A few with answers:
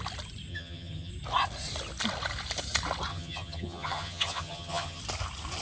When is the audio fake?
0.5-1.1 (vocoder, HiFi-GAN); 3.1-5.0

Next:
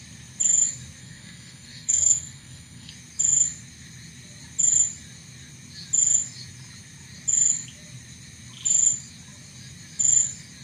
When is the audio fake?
1.0-2.9 (codec, SNAC)

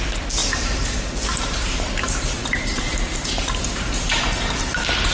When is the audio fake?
0.4-3.5 (vocoder, BigVGAN v2)

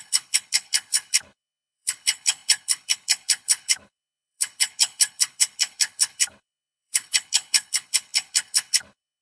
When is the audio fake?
0.0-9.2 (codec, HILCodec)

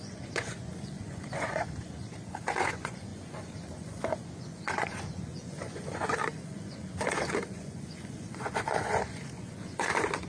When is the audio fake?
0.0-10.3 (vocoder, Vocos)

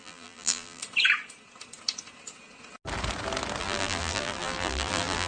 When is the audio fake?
0.0-0.8 (vocoder, BigVGAN v2); 3.6-5.3